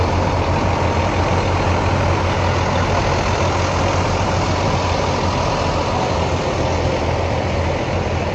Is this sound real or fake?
real